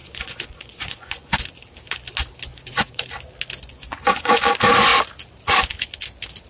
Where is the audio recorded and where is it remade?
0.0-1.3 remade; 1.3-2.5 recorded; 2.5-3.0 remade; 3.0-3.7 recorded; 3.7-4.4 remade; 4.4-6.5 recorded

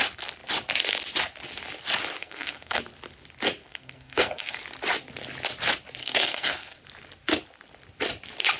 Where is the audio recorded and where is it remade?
0.0-2.2 recorded; 2.2-2.8 remade; 2.8-3.6 recorded; 3.6-4.6 remade; 4.6-6.0 recorded; 6.0-6.8 remade; 6.8-8.6 recorded